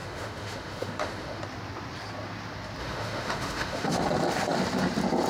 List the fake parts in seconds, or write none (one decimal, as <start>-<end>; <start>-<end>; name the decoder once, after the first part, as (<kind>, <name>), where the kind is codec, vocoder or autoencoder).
0.0-1.4 (autoencoder, DAC-VAE); 2.8-3.9